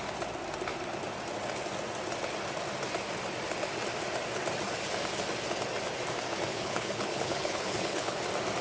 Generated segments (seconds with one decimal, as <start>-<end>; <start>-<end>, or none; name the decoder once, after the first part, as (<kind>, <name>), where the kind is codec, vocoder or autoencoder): 6.5-8.2 (codec, HILCodec)